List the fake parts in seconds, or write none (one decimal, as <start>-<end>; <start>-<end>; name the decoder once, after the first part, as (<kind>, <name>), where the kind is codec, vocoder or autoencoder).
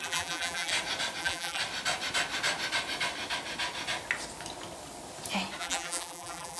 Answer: 0.0-0.7 (vocoder, BigVGAN v2); 1.2-1.6; 5.6-6.6